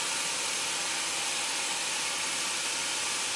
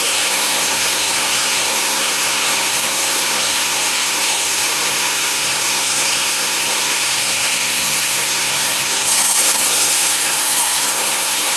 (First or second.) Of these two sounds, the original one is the first